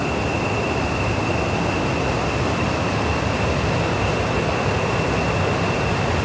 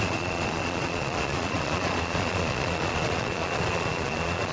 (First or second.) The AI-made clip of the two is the second